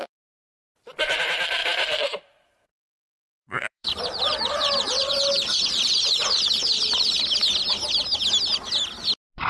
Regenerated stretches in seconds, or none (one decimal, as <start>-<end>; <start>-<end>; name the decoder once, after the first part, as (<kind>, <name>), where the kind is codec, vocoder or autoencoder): 1.6-2.2 (vocoder, BigVGAN v2); 2.7-7.2